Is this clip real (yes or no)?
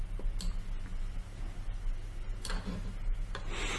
yes